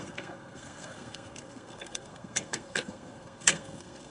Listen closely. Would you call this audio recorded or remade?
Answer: remade